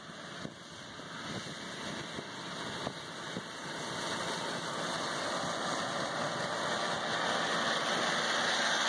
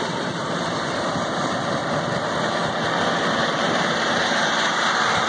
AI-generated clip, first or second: second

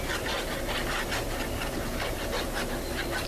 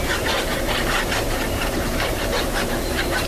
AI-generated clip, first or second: second